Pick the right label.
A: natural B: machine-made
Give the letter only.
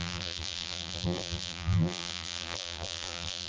B